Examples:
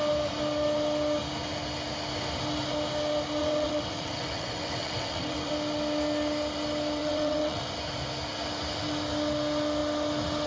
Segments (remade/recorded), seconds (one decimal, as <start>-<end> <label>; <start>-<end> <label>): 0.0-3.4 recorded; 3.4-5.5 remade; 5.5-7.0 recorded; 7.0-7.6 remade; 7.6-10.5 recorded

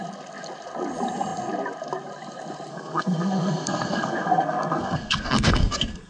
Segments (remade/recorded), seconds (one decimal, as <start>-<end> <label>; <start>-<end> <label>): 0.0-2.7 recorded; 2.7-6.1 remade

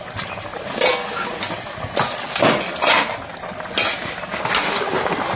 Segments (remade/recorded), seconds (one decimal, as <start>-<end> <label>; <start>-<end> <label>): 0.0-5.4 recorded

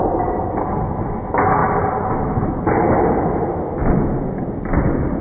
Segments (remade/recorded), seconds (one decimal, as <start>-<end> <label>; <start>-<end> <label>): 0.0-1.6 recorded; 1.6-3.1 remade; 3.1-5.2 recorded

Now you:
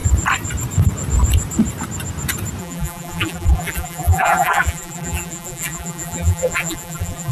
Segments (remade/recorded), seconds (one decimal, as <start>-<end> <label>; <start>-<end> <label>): 0.0-2.6 recorded; 2.6-7.3 remade